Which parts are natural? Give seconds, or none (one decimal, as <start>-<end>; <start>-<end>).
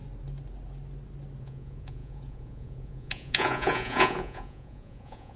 0.0-1.4